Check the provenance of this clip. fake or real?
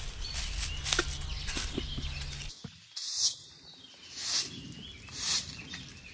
real